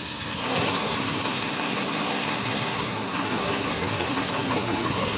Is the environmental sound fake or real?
fake